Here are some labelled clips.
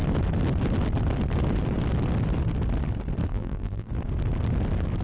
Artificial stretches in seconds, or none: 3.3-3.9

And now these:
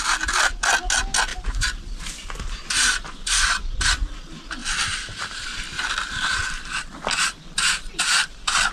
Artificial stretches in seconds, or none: 1.3-3.8; 4.6-6.1

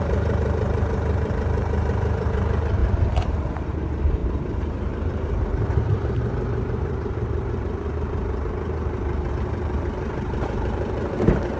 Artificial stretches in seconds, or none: 0.0-11.6

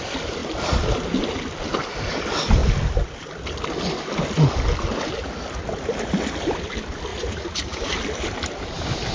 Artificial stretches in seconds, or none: 2.6-3.4; 7.1-9.1

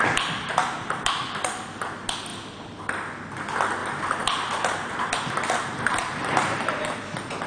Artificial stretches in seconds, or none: 0.5-1.2; 3.8-5.0; 5.6-7.0

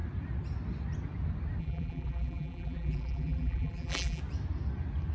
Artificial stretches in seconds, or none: 1.6-4.2

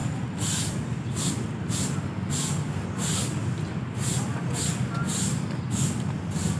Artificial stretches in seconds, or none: none

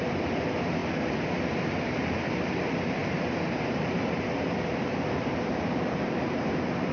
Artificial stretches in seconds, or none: 0.0-0.8; 1.5-6.9